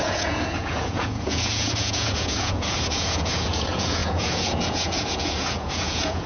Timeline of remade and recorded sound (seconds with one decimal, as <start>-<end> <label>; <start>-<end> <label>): 0.0-6.3 remade